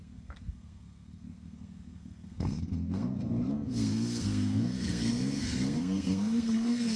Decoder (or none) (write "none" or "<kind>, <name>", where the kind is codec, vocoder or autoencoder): codec, SNAC